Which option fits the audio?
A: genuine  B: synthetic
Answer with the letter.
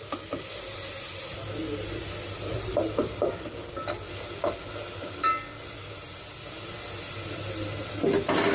A